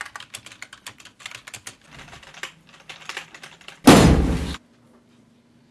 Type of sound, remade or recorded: recorded